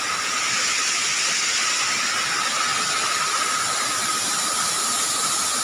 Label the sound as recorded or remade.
recorded